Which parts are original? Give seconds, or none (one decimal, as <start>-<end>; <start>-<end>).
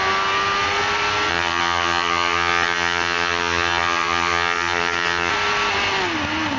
0.0-1.3; 5.3-6.6